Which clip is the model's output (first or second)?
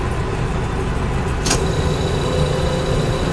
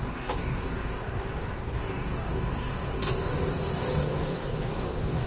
second